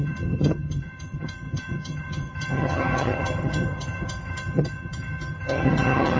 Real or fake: fake